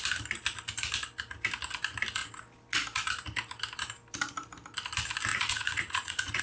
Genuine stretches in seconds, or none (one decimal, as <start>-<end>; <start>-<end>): 0.0-5.3